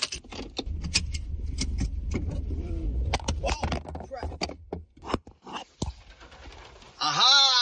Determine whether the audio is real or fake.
real